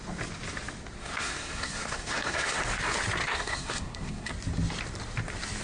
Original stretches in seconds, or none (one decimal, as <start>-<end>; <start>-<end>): 0.0-1.0; 2.6-3.3; 4.3-5.6